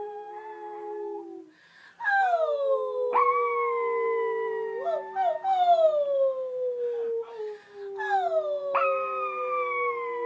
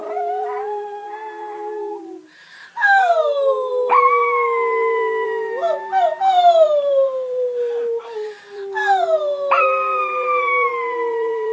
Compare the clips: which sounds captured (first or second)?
first